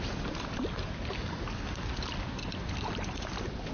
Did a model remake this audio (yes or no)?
no